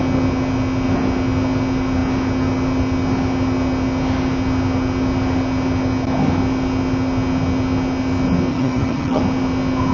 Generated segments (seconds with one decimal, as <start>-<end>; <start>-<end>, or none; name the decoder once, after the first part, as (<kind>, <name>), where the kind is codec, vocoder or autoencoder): 8.5-9.2 (vocoder, HiFi-GAN)